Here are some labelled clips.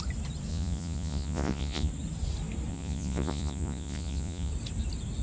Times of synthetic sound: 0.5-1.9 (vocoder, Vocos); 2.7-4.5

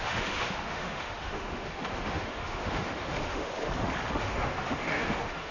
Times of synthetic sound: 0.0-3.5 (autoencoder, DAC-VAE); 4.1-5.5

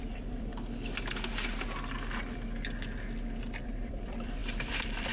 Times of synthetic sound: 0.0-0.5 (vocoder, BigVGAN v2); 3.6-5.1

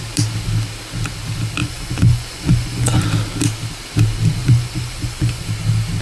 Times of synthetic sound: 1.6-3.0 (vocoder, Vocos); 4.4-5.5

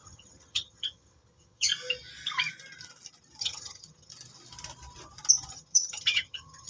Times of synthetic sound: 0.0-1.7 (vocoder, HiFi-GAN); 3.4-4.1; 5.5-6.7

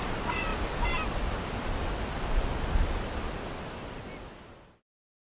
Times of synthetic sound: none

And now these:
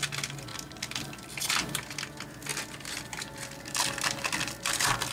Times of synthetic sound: none